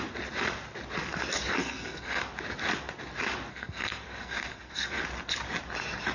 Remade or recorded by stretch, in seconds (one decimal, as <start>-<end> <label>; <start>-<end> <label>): 0.0-1.6 recorded; 1.6-2.2 remade; 2.2-3.5 recorded; 3.5-5.0 remade; 5.0-6.1 recorded